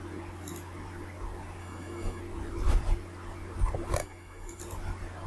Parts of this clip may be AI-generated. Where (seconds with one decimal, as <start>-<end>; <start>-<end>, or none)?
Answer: 1.6-2.2; 4.0-4.6